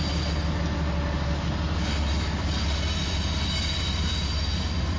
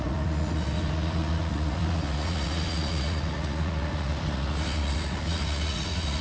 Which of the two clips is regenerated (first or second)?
second